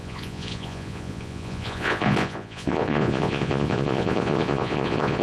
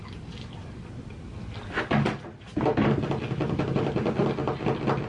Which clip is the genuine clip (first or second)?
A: second